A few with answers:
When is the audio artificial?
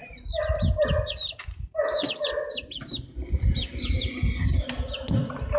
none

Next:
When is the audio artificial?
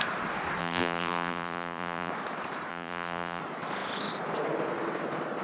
0.6-2.1 (vocoder, BigVGAN v2); 2.7-3.4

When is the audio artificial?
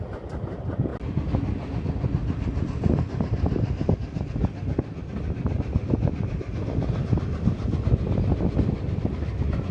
none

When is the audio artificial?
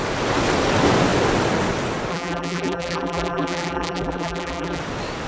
2.1-4.8 (vocoder, BigVGAN v2)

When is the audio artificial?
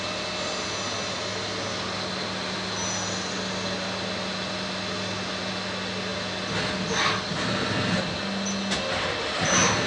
none